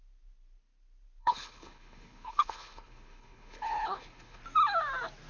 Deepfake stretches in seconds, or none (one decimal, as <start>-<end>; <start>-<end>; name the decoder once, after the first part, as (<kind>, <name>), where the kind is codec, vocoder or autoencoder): 1.2-4.4 (codec, HILCodec)